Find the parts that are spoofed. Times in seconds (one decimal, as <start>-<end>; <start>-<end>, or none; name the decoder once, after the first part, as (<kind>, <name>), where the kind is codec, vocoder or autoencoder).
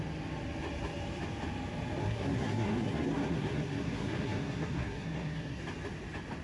2.0-5.6 (codec, SNAC)